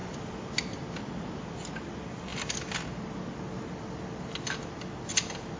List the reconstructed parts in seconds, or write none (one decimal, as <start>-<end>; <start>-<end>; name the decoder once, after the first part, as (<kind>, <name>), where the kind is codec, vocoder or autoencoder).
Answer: none